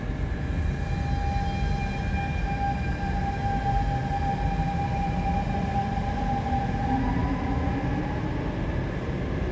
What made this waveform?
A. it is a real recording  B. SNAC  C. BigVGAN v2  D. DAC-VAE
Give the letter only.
A